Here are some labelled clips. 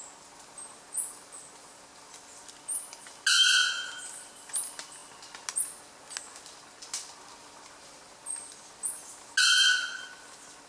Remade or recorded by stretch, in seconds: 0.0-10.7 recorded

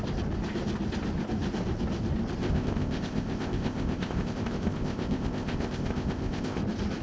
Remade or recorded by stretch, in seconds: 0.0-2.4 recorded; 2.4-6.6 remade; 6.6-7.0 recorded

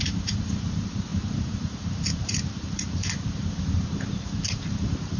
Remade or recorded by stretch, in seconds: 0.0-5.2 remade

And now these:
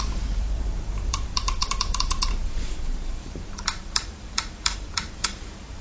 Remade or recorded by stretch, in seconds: 0.0-5.8 remade

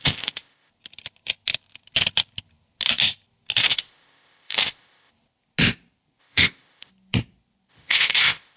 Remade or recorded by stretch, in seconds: 0.0-0.7 remade; 0.7-3.6 recorded; 3.6-5.1 remade; 5.1-6.2 recorded; 6.2-6.9 remade; 6.9-7.7 recorded; 7.7-8.6 remade